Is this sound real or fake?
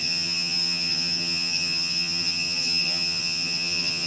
fake